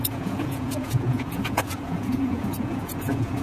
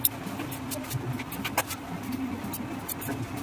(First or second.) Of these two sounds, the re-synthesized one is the first